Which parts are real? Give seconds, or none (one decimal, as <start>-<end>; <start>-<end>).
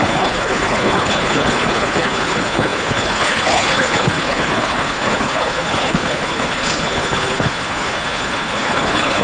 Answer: none